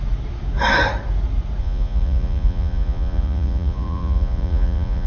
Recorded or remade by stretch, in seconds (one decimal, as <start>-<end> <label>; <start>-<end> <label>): 0.0-1.6 recorded; 1.6-5.1 remade